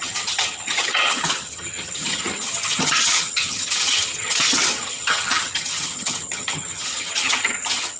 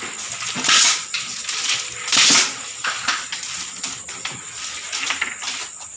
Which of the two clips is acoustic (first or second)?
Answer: second